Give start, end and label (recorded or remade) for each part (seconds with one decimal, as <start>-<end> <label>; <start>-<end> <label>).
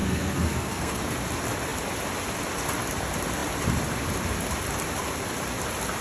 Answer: 0.0-1.0 remade; 1.0-6.0 recorded